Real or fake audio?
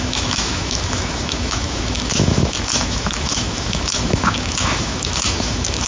fake